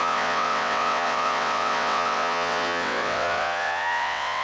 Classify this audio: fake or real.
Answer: fake